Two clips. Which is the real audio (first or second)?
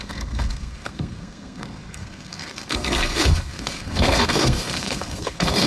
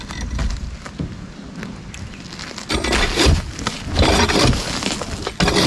second